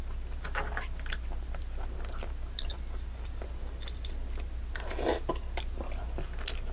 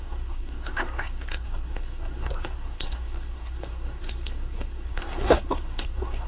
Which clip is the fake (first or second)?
second